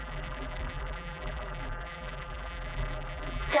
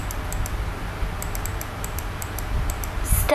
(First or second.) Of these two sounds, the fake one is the first